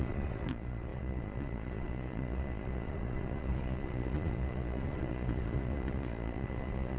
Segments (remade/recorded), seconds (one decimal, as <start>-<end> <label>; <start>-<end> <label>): 0.0-7.0 remade